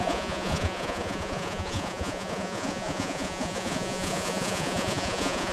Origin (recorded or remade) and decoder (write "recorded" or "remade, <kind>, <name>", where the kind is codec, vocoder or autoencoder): remade, vocoder, Vocos